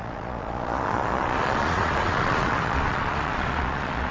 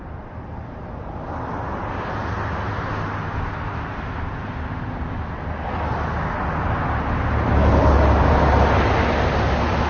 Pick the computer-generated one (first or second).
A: first